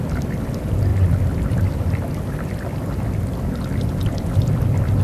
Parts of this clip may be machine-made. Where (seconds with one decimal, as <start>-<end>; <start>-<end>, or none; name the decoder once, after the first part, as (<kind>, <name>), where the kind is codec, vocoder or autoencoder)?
none